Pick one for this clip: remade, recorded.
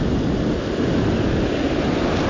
recorded